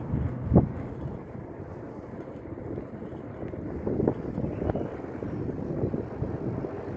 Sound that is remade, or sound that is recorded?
recorded